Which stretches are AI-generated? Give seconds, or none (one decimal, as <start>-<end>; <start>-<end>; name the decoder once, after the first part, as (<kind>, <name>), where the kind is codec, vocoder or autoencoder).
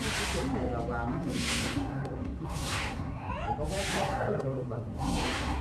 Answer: 1.1-3.3 (codec, SNAC); 3.9-5.6